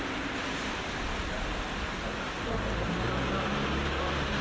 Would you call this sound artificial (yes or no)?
no